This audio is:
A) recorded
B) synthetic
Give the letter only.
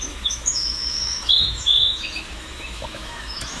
B